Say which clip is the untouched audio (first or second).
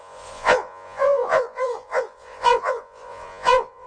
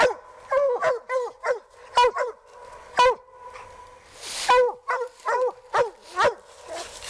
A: second